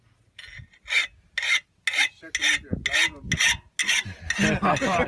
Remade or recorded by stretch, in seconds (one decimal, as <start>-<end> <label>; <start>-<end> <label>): 0.0-5.1 recorded